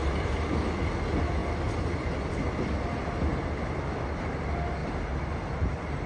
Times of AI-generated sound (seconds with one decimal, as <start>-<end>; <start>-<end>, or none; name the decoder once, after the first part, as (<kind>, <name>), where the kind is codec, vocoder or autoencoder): 0.0-0.5 (vocoder, BigVGAN v2); 4.8-5.5

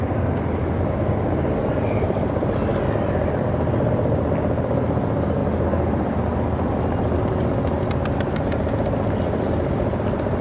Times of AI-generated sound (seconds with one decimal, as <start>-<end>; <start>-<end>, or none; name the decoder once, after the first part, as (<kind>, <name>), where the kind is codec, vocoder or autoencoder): none

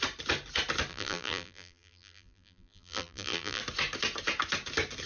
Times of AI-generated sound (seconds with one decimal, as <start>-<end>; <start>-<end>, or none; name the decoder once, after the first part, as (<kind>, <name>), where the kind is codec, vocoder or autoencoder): 0.9-3.6 (vocoder, BigVGAN v2)